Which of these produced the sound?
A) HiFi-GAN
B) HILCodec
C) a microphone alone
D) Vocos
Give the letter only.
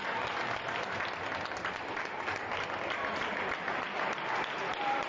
C